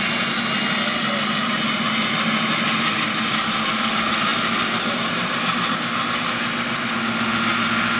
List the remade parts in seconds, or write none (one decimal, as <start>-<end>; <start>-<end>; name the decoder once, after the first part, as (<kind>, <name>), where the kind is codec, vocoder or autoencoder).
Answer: none